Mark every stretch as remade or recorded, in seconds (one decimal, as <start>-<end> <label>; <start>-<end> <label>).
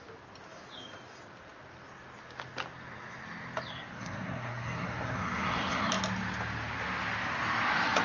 0.0-3.7 recorded; 3.7-5.9 remade; 5.9-8.0 recorded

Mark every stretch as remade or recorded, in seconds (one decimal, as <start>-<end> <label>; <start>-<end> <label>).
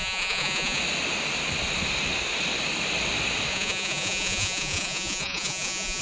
0.0-0.8 remade; 0.8-3.5 recorded; 3.5-6.0 remade